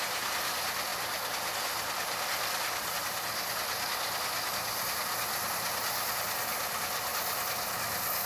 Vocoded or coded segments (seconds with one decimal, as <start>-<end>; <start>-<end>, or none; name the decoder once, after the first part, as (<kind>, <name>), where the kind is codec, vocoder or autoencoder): none